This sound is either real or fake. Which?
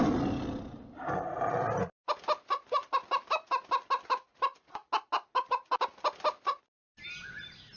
real